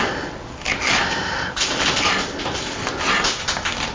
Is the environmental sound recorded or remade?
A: recorded